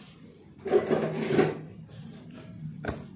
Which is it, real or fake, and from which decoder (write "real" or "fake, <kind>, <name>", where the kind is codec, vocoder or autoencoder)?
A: real